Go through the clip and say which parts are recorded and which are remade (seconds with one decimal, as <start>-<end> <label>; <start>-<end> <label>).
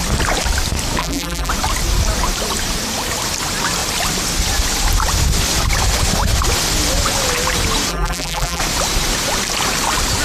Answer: 0.0-1.0 recorded; 1.0-1.5 remade; 1.5-7.9 recorded; 7.9-8.6 remade; 8.6-10.2 recorded